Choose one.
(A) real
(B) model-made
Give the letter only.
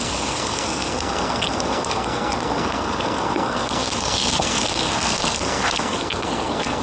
B